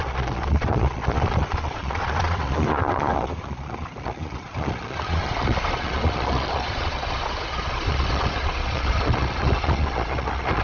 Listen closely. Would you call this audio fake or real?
fake